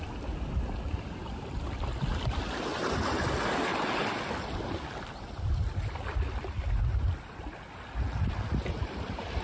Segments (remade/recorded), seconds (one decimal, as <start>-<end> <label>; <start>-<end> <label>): 0.0-9.4 recorded